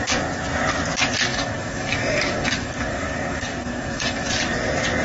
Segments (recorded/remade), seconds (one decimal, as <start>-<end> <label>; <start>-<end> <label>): 0.0-1.3 recorded; 1.3-4.3 remade; 4.3-5.0 recorded